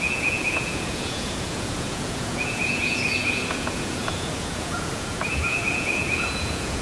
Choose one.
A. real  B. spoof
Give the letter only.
B